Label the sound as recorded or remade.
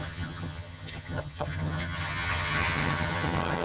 remade